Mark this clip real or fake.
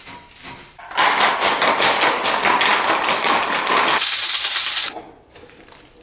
real